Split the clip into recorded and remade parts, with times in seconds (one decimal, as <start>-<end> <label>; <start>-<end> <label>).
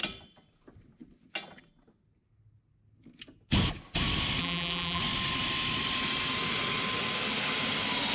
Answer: 0.0-4.4 recorded; 4.4-5.0 remade; 5.0-8.1 recorded